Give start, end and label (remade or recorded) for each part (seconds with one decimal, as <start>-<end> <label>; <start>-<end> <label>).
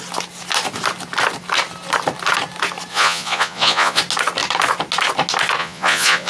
0.0-2.9 recorded; 2.9-4.0 remade; 4.0-5.6 recorded; 5.6-6.3 remade